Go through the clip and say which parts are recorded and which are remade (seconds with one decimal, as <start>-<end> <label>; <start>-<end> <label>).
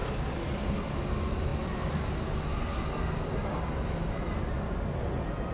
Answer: 0.0-5.5 recorded